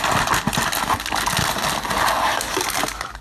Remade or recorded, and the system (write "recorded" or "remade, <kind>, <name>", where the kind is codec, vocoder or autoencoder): recorded